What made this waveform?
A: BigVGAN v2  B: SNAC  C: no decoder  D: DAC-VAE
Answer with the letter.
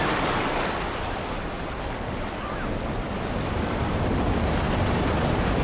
C